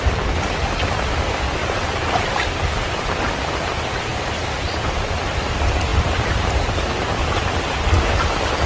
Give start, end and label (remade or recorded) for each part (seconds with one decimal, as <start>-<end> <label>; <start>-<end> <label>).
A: 0.0-1.6 remade; 1.6-3.3 recorded; 3.3-8.7 remade